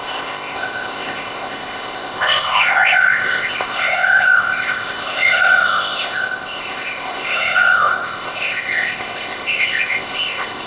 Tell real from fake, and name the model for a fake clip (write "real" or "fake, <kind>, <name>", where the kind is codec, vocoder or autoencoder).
fake, codec, ZipCodec